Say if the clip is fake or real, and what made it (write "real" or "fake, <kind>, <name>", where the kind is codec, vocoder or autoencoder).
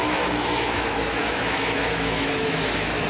fake, autoencoder, DAC-VAE